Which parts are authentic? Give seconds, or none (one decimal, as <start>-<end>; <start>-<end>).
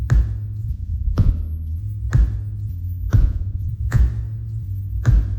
0.0-0.6; 1.3-3.2; 4.0-5.4